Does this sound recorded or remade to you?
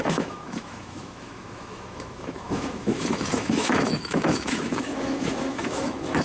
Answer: remade